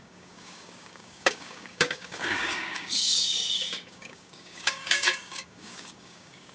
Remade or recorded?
remade